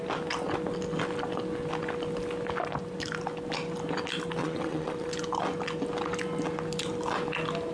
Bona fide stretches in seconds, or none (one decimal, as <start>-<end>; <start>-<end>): 0.0-4.4; 5.1-7.7